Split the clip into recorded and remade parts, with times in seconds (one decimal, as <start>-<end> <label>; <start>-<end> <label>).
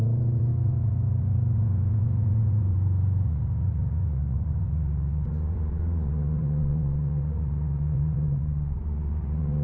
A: 0.0-9.6 remade